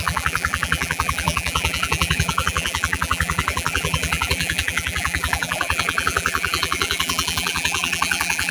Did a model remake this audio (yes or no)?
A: yes